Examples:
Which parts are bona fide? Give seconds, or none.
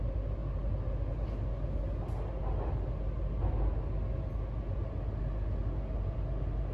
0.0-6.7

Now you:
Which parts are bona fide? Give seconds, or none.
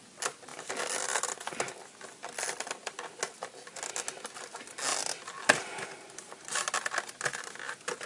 0.0-8.1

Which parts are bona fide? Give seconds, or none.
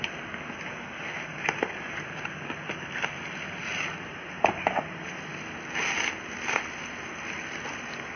0.0-8.2